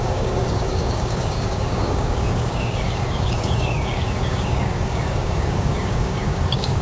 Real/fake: fake